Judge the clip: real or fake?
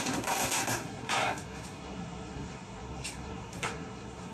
fake